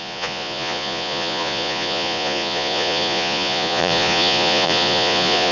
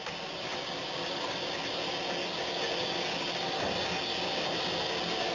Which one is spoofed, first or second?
first